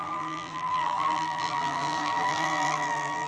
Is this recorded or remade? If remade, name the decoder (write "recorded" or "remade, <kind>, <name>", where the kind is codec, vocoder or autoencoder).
remade, vocoder, BigVGAN v2